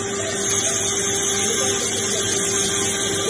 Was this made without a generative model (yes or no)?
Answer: yes